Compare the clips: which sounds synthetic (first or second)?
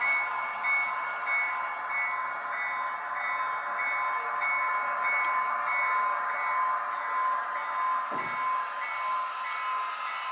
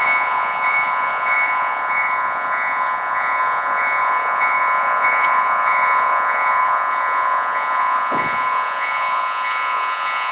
second